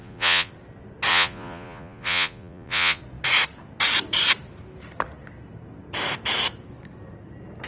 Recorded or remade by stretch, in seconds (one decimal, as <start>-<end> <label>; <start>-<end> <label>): 0.0-0.5 remade; 0.5-1.1 recorded; 1.1-3.0 remade; 3.0-7.7 recorded